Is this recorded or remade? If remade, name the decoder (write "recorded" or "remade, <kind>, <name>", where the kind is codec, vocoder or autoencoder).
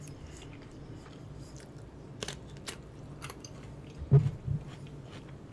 remade, vocoder, BigVGAN v2